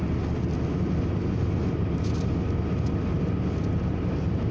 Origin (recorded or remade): recorded